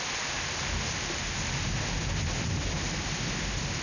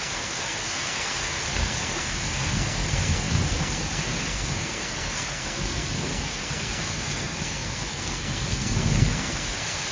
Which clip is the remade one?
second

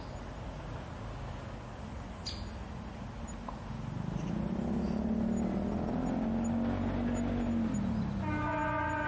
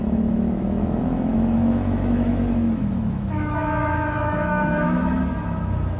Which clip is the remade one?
second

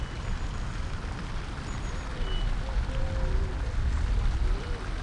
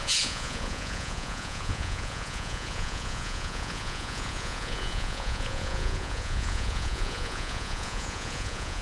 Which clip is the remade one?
second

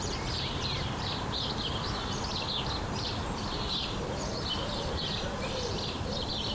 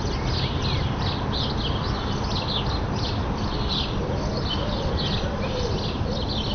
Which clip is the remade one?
first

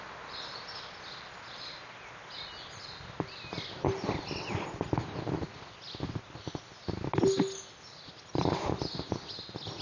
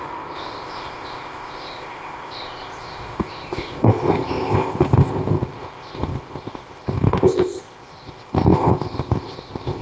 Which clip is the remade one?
second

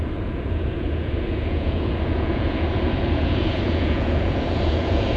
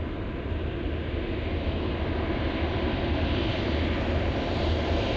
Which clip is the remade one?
first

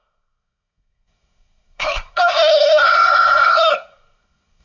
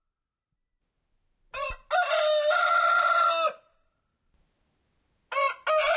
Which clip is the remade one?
first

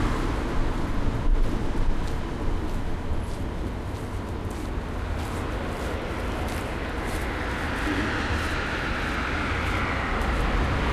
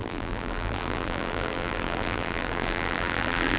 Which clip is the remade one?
second